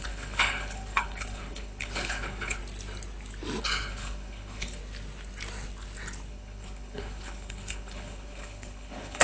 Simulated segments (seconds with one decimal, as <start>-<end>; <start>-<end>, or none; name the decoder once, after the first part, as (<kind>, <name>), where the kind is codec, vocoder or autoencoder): 0.0-2.6 (codec, HILCodec); 3.6-4.8; 6.3-9.2